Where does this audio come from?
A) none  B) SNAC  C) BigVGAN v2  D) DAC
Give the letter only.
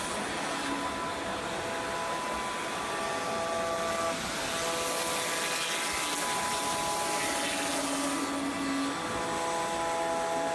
A